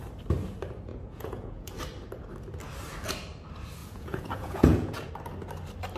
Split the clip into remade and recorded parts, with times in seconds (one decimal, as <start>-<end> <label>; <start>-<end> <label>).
0.0-0.9 recorded; 0.9-1.7 remade; 1.7-3.8 recorded; 3.8-5.1 remade; 5.1-6.0 recorded